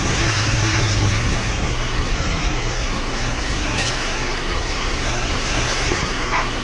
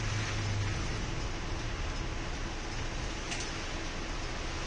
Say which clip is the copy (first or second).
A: first